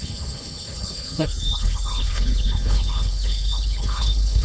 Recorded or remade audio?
remade